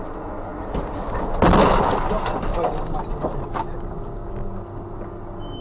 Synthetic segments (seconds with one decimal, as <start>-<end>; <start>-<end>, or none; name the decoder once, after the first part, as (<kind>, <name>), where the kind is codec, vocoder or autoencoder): none